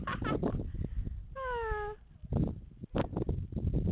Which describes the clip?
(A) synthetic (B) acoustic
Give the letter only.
B